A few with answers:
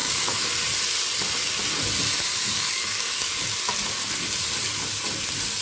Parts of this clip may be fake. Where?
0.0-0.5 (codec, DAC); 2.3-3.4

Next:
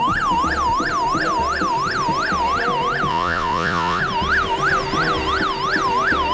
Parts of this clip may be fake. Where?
3.1-4.0 (vocoder, Vocos)

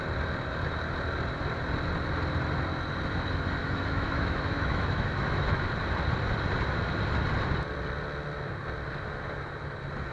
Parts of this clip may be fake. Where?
3.6-5.6 (autoencoder, DAC-VAE)